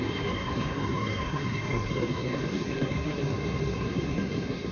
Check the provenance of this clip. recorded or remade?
remade